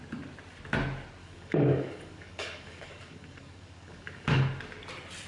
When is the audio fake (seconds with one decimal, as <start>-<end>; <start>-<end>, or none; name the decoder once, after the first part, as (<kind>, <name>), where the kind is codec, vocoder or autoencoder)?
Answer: 1.2-4.4 (codec, DAC)